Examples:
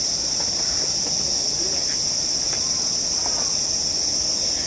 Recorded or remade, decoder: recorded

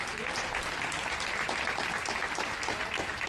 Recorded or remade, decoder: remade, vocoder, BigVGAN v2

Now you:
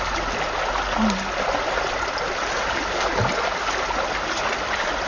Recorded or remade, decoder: recorded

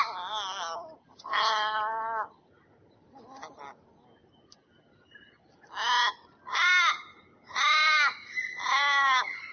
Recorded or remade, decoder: recorded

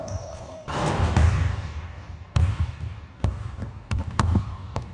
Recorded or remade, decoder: remade, codec, DAC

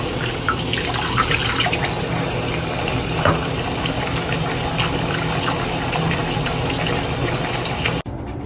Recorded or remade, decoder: recorded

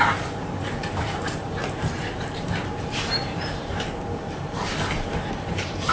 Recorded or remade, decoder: remade, vocoder, BigVGAN v2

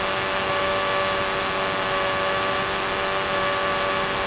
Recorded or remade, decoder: recorded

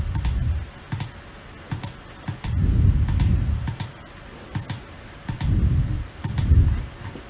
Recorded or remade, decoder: recorded